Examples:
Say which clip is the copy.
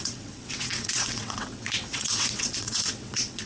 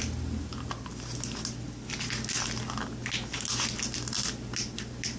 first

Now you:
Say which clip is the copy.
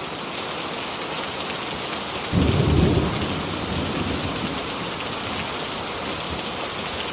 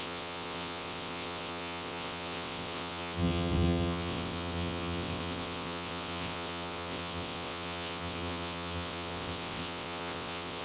second